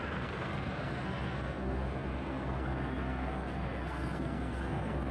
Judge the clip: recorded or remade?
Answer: remade